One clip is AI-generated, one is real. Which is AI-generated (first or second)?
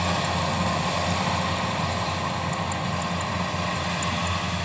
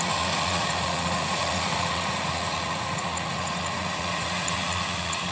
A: second